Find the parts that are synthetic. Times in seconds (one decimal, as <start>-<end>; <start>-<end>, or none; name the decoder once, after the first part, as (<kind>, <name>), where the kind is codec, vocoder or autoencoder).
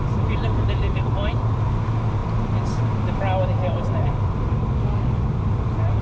none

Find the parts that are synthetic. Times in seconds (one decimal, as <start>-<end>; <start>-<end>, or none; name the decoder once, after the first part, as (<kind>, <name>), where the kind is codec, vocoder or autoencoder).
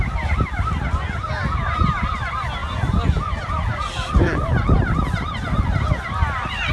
none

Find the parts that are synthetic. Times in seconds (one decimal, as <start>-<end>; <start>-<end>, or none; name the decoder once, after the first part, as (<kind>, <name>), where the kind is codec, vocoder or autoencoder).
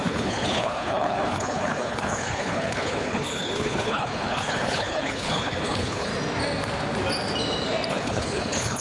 0.0-6.1 (codec, HILCodec); 7.9-8.8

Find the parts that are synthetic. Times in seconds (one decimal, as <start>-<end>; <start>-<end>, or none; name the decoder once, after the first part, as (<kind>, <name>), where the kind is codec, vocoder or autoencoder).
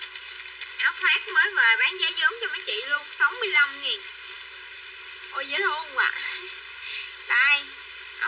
none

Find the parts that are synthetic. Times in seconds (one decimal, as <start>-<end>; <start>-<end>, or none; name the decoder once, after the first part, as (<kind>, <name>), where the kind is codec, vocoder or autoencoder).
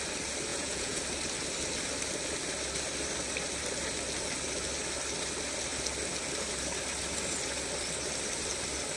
0.5-1.0 (vocoder, Vocos)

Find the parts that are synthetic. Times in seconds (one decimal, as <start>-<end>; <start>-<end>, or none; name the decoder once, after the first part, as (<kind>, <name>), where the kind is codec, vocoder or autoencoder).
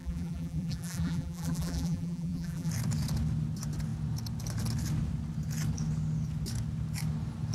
0.0-2.7 (vocoder, BigVGAN v2)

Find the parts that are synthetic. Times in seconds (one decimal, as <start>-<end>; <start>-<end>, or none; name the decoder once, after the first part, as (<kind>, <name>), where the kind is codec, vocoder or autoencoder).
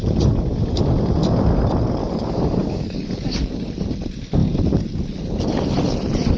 2.0-3.5 (codec, DAC)